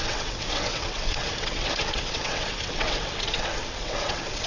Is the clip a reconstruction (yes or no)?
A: yes